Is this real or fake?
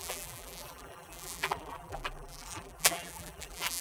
fake